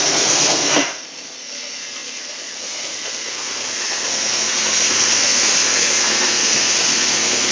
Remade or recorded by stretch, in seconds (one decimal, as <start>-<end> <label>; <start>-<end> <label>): 0.0-7.5 remade